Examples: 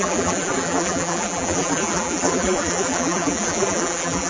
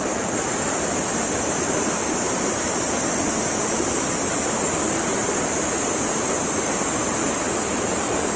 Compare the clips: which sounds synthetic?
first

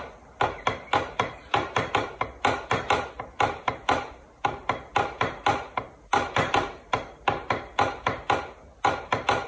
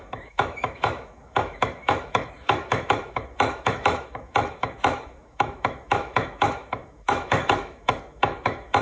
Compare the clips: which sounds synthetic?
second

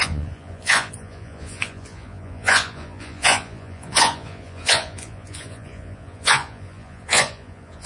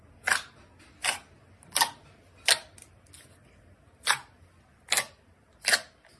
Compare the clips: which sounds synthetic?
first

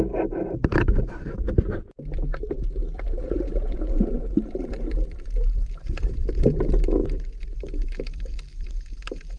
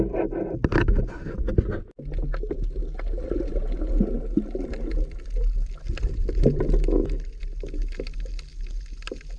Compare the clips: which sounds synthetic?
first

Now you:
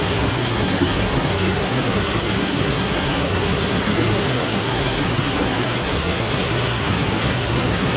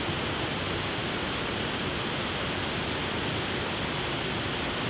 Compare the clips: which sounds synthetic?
first